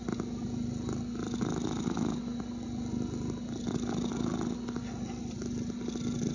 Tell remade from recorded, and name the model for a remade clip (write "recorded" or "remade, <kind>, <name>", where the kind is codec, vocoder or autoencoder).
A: recorded